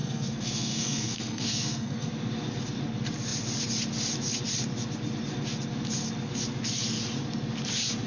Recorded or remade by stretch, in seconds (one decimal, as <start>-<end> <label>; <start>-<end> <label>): 0.0-2.1 remade; 2.1-8.1 recorded